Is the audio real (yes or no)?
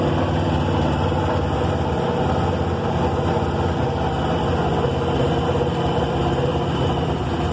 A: yes